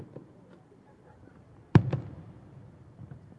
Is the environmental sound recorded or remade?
remade